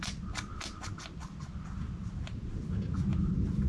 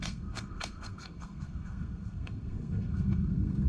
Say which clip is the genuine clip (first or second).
first